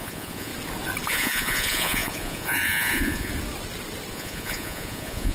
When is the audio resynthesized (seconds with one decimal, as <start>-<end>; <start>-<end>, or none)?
0.0-0.5; 1.1-3.3; 4.1-5.3